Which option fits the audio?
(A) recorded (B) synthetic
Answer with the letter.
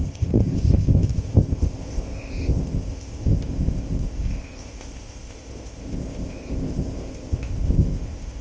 B